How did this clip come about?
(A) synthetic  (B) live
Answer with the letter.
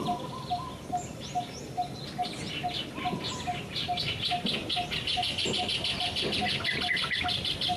B